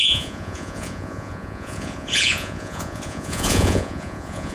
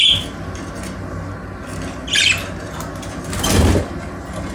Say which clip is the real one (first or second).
second